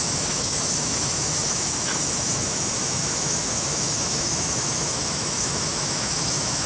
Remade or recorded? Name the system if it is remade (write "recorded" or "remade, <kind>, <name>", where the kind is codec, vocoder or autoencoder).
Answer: remade, autoencoder, DAC-VAE